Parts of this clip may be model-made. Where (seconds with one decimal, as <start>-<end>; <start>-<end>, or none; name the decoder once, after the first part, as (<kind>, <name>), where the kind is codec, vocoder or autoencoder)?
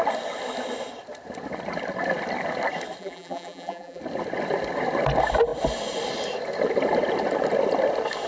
3.0-4.0 (vocoder, BigVGAN v2)